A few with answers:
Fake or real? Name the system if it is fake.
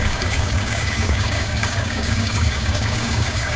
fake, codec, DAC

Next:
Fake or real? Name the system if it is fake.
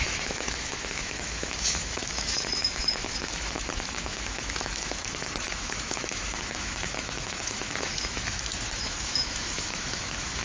fake, autoencoder, DAC-VAE